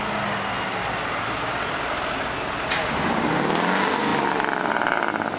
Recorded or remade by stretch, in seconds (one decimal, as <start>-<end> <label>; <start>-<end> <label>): 0.0-4.1 recorded; 4.1-4.7 remade; 4.7-5.4 recorded